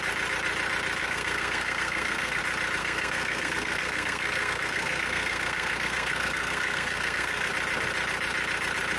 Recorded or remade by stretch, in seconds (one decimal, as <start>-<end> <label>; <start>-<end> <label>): 0.0-1.0 recorded; 1.0-2.4 remade; 2.4-2.8 recorded; 2.8-7.5 remade; 7.5-9.0 recorded